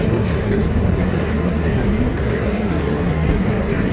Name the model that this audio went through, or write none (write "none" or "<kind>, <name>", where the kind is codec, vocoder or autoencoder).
codec, SNAC